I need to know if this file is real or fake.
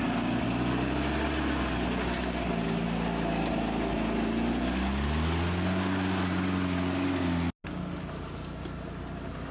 real